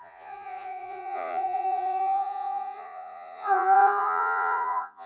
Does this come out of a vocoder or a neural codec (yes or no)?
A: yes